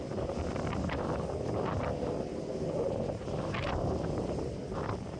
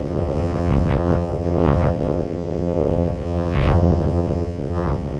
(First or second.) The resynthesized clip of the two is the second